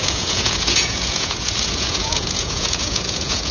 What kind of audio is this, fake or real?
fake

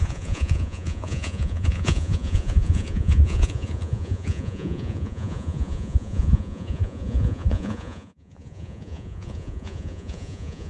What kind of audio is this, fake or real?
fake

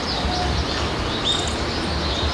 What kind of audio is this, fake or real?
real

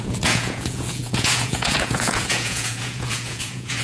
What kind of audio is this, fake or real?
fake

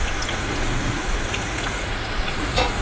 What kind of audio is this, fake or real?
fake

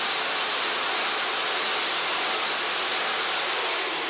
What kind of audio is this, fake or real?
real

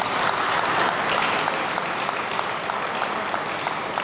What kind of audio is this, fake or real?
real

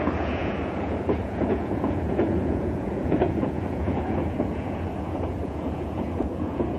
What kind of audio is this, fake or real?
fake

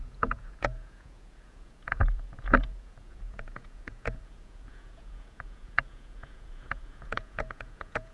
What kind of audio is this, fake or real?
fake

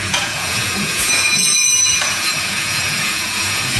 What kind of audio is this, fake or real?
fake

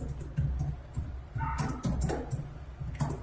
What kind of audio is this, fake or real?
real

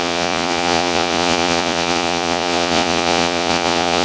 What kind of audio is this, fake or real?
fake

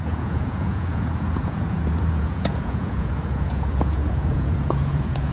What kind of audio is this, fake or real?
fake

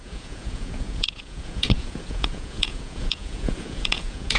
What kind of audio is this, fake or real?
fake